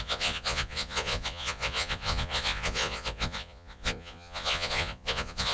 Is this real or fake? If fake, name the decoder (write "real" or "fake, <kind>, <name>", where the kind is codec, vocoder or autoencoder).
fake, vocoder, Vocos